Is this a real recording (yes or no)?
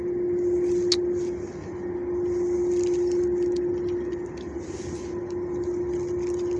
yes